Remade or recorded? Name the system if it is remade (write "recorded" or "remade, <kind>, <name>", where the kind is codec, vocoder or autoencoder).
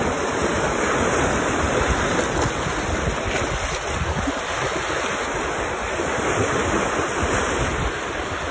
recorded